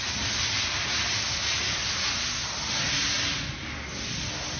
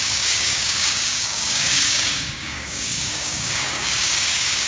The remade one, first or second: second